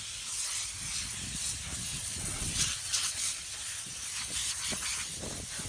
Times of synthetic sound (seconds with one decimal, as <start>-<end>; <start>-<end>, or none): 1.9-3.4

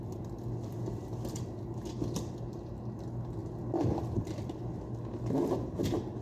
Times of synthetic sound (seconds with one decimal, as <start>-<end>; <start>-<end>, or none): 3.4-4.6